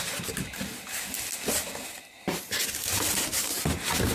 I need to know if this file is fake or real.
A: real